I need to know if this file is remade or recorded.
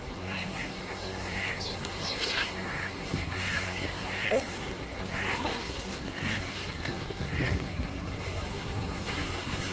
remade